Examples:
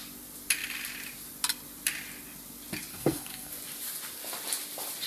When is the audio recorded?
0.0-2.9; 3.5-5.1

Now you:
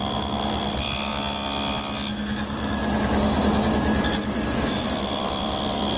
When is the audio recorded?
1.1-4.7

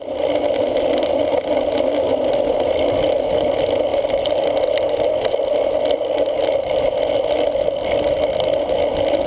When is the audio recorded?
0.0-9.3

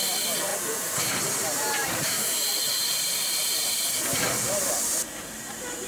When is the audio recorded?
0.0-0.5; 3.8-5.9

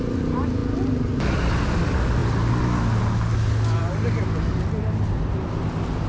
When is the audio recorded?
0.0-6.1

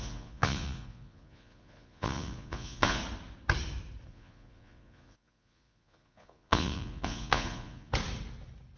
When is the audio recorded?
3.0-4.1; 7.9-8.8

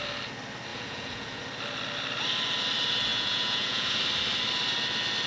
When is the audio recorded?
0.0-0.7; 1.4-3.1; 4.0-5.3

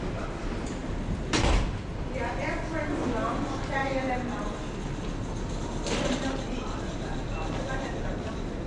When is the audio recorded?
0.8-1.4; 3.8-6.8